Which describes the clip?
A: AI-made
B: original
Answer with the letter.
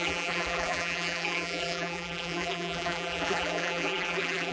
A